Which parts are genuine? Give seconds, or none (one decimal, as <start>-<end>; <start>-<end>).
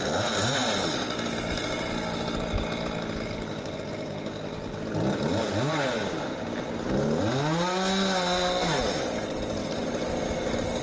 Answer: 0.0-9.6